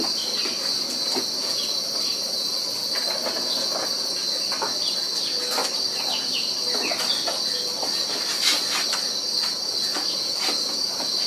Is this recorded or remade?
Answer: recorded